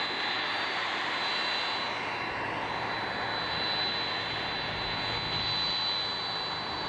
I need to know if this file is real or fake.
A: real